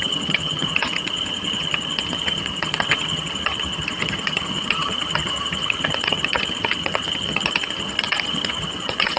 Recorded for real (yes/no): no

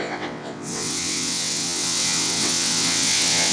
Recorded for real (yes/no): no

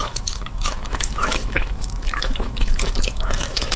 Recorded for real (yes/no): no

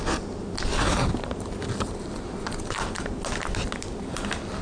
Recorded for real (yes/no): yes